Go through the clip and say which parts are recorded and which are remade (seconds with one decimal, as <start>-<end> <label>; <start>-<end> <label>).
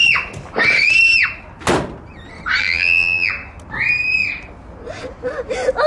0.0-2.6 recorded; 2.6-3.3 remade; 3.3-5.9 recorded